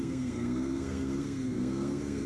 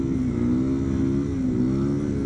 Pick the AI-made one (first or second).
first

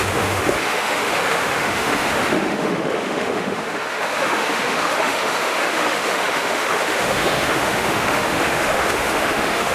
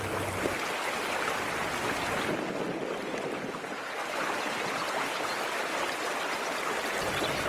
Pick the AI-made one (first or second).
first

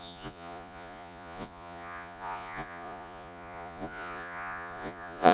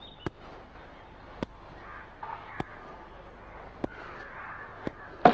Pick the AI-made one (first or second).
first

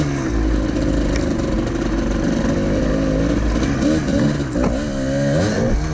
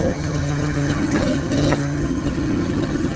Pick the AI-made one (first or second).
second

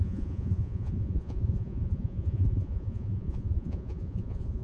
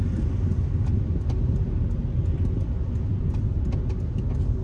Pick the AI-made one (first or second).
first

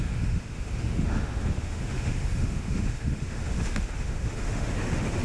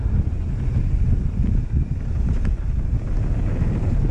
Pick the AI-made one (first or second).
first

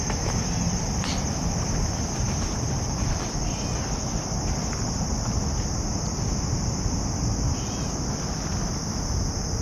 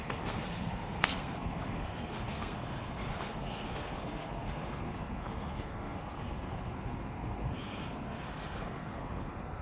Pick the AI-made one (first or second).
second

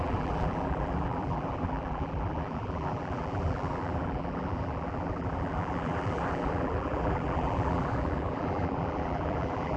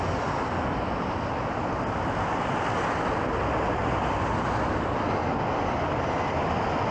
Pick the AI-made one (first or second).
first